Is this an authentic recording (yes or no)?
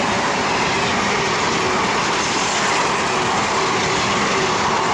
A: yes